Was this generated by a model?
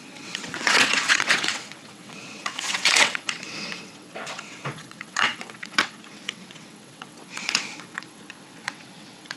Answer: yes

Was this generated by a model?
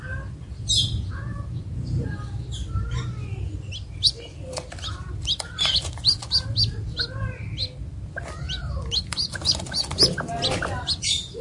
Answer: yes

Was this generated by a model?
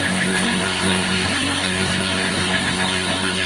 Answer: yes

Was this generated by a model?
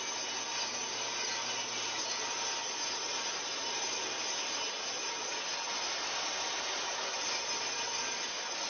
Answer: no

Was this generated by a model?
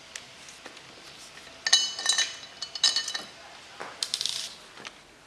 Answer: no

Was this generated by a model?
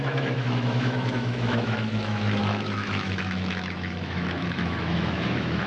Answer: yes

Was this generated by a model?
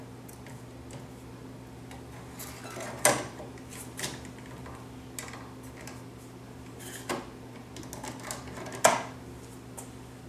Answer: no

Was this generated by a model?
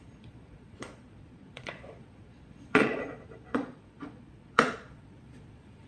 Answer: yes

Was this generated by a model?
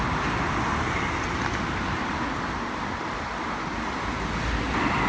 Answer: no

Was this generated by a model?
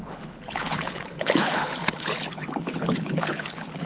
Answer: yes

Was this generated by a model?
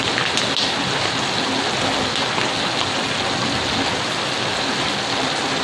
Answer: no